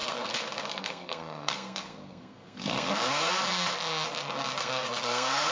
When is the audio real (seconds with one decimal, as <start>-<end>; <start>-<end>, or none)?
3.3-4.6